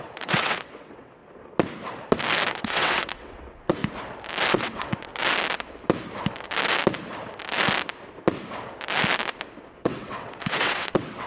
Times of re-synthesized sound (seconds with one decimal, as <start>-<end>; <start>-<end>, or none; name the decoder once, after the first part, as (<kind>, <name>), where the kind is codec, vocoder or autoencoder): 0.0-1.2 (vocoder, WaveNeXt); 2.5-3.8; 4.5-5.1; 9.6-11.3